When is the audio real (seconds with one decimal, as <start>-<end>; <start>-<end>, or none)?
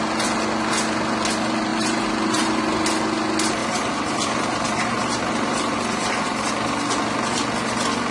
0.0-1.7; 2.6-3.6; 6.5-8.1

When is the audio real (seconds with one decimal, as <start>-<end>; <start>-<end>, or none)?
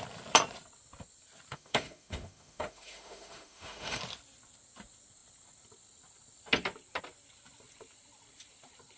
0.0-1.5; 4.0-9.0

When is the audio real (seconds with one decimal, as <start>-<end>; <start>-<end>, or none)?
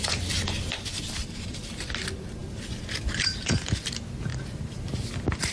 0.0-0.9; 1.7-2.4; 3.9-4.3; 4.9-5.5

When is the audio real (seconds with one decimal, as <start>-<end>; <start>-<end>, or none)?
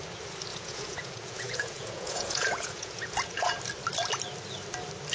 0.0-0.5; 3.6-5.1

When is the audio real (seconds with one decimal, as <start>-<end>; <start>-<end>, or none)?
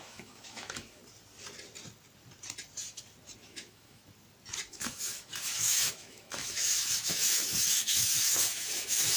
1.0-3.4; 4.0-4.7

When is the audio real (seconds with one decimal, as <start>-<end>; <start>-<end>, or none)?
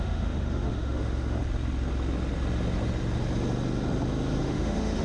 1.4-4.4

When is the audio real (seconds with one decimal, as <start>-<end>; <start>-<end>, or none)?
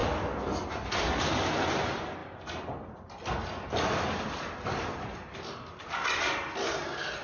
0.0-7.2